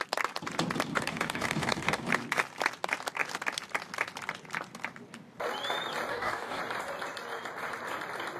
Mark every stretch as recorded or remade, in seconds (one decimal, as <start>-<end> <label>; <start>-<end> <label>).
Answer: 0.0-0.9 recorded; 0.9-2.1 remade; 2.1-6.1 recorded; 6.1-6.6 remade; 6.6-8.4 recorded